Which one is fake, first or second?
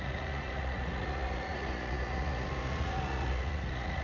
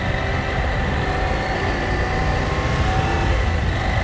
first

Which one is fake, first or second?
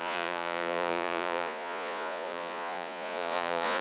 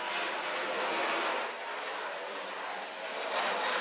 first